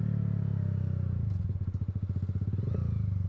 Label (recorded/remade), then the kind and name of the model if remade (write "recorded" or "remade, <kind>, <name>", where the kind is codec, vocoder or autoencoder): recorded